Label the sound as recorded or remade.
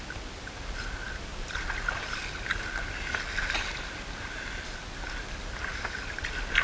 recorded